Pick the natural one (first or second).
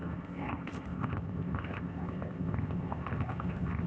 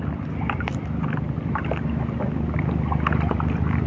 second